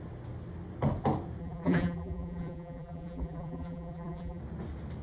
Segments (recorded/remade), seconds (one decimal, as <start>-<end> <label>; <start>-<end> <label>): 0.0-1.4 recorded; 1.4-4.4 remade; 4.4-5.0 recorded

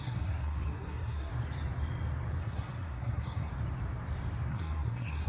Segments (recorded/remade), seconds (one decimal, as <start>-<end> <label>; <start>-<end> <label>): 0.0-1.3 remade; 1.3-2.4 recorded; 2.4-3.5 remade; 3.5-4.5 recorded; 4.5-5.3 remade

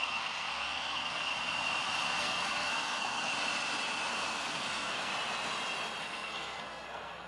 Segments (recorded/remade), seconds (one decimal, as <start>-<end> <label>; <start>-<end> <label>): 0.0-1.3 remade; 1.3-2.2 recorded; 2.2-3.3 remade; 3.3-4.1 recorded; 4.1-5.1 remade; 5.1-6.0 recorded; 6.0-7.3 remade

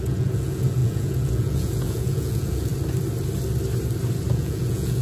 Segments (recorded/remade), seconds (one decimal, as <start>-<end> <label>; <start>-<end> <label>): 0.0-2.7 remade; 2.7-4.3 recorded; 4.3-5.0 remade